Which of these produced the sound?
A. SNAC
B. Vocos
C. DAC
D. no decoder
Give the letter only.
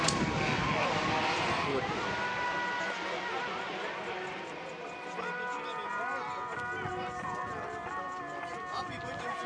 D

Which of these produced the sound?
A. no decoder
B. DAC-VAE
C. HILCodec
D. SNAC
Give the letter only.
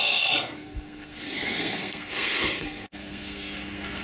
D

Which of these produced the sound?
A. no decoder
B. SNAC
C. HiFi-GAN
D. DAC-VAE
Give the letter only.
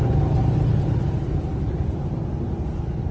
A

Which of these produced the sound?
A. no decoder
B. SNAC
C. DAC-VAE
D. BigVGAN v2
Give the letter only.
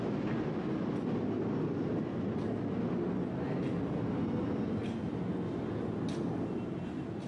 A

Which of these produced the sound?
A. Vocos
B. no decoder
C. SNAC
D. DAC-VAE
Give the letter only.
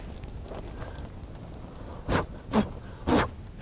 B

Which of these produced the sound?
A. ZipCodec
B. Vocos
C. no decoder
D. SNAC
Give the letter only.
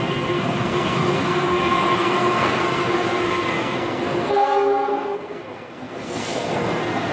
D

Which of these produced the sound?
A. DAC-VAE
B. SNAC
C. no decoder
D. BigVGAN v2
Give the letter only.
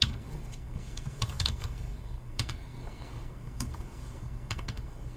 B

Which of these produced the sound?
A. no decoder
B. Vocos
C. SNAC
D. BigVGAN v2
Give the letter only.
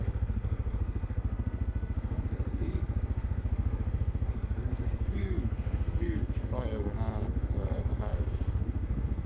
C